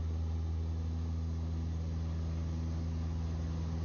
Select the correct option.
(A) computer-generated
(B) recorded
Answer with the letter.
B